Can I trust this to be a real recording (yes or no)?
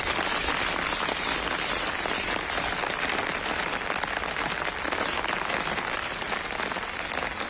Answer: yes